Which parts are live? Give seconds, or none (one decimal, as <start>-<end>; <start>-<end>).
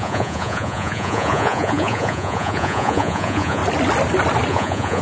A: 3.6-4.5